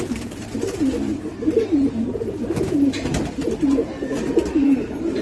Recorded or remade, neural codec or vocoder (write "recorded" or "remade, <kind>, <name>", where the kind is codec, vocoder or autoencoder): remade, vocoder, BigVGAN v2